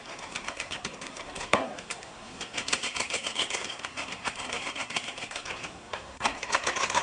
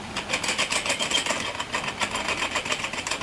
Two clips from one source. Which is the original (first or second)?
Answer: second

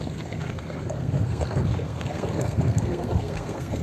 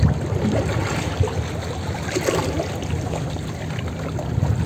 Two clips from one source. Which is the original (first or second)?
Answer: second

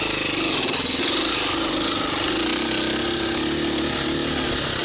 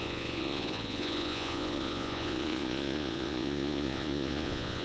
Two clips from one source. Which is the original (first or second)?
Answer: first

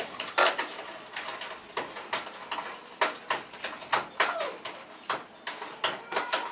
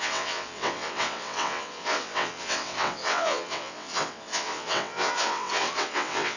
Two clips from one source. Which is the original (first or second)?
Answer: first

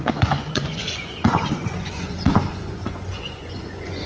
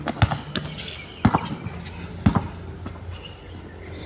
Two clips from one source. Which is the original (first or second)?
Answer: second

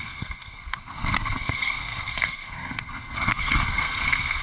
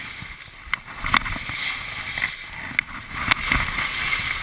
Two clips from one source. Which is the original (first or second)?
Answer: second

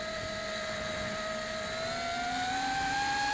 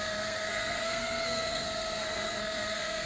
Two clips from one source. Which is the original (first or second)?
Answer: first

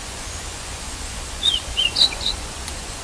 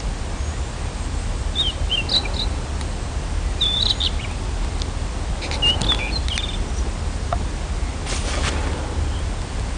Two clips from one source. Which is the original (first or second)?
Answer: second